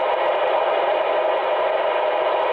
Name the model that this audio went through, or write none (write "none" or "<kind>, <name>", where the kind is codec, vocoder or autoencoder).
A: none